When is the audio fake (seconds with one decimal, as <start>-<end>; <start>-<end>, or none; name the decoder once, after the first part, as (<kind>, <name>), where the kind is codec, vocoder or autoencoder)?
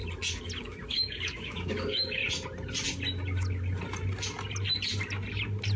0.6-2.2 (autoencoder, DAC-VAE)